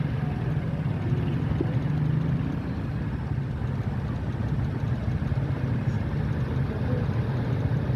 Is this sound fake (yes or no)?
no